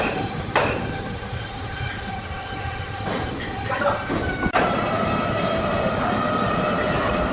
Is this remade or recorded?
remade